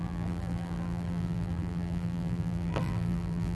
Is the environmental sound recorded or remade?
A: remade